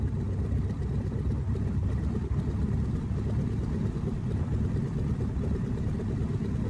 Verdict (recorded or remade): recorded